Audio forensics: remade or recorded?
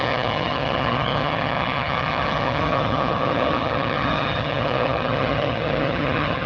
remade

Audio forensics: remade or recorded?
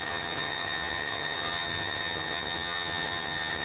remade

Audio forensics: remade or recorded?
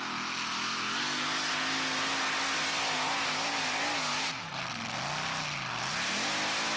recorded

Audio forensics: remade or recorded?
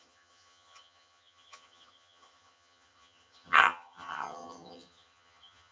remade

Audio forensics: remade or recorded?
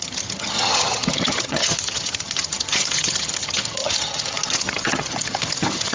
remade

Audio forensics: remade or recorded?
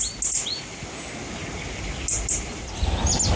recorded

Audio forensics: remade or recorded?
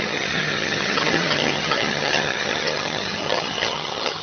remade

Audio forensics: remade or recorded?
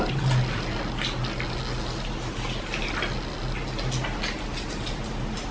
recorded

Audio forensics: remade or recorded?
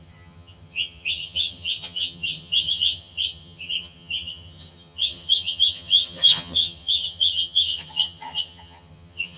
remade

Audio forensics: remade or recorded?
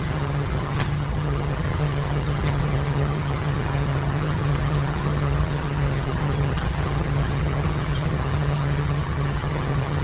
remade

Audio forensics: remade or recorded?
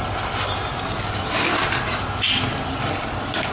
recorded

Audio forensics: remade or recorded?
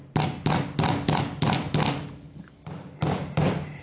recorded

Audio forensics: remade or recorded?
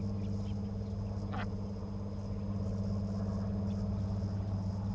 recorded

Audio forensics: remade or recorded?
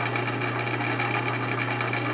recorded